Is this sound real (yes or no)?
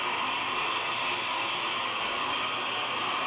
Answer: yes